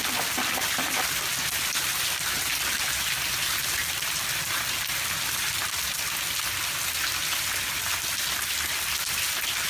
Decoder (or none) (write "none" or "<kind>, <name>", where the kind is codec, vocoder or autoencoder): none